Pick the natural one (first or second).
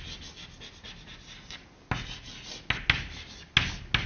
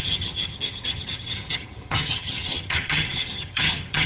first